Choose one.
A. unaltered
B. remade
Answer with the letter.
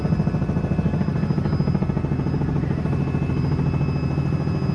A